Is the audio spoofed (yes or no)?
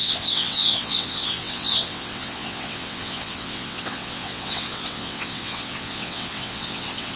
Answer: yes